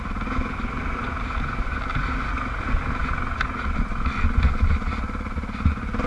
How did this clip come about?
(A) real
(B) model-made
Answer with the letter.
A